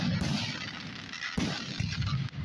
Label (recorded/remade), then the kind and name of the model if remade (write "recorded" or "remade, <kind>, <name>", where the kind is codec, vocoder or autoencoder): recorded